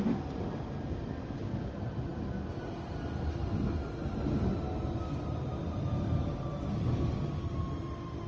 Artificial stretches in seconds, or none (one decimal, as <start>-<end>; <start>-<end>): none